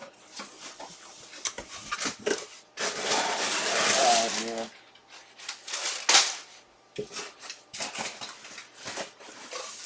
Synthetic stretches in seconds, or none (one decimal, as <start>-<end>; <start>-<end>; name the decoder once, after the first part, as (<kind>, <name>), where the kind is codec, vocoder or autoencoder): none